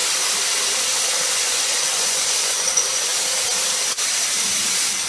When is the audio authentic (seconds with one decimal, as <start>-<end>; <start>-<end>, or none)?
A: 0.0-1.3; 3.1-5.1